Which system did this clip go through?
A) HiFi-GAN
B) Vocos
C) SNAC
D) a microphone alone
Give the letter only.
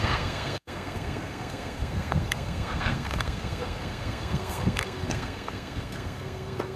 C